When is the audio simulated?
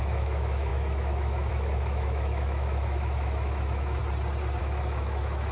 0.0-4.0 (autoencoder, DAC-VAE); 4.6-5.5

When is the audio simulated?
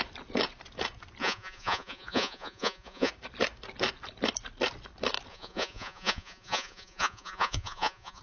1.2-3.1 (vocoder, Vocos); 5.3-8.2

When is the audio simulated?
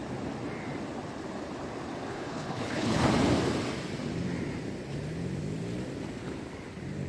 2.1-3.0 (codec, HILCodec)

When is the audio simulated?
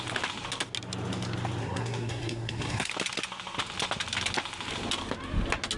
1.6-2.9 (codec, SNAC)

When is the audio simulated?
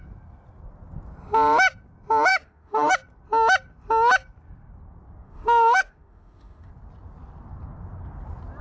2.3-2.9 (autoencoder, DAC-VAE); 5.2-6.7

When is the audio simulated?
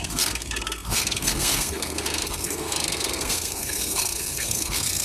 0.0-5.0 (codec, SNAC)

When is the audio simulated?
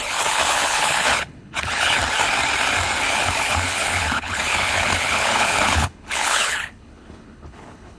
0.0-2.0 (codec, HILCodec); 3.1-8.0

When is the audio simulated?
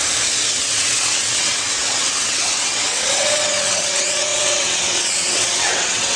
0.5-6.2 (vocoder, WaveNeXt)